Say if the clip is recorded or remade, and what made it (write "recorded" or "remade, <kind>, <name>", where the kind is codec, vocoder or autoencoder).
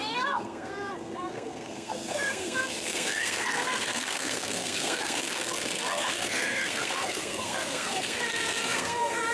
remade, codec, SNAC